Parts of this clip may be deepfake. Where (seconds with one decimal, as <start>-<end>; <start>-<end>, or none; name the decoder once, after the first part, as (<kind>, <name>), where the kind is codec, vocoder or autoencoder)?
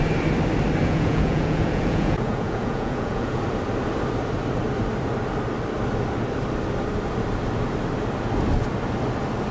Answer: 0.8-3.4 (vocoder, Vocos)